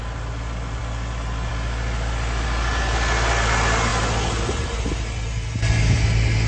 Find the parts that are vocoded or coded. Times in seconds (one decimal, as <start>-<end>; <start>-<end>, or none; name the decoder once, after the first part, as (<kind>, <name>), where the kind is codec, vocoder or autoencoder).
none